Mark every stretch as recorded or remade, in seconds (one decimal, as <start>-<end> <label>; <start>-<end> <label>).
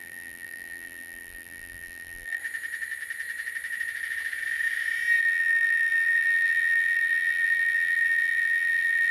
0.0-2.4 remade; 2.4-5.2 recorded; 5.2-9.1 remade